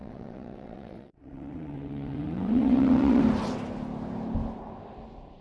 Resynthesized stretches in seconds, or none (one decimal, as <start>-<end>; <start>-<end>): 0.0-3.2